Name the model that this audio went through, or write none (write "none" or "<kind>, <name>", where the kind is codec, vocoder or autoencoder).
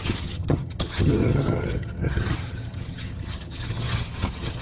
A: vocoder, HiFi-GAN